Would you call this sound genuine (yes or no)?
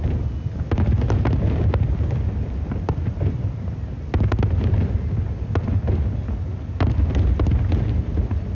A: yes